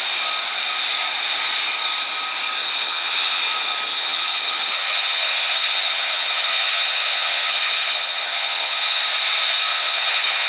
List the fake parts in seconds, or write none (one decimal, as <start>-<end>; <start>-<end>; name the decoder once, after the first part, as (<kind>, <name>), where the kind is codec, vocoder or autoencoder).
2.6-3.4 (vocoder, HiFi-GAN); 3.9-9.0; 9.7-10.5